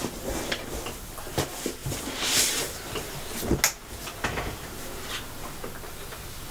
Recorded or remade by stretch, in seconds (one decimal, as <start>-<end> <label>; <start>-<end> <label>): 0.0-6.5 recorded